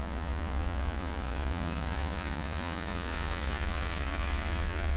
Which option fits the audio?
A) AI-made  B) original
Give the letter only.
A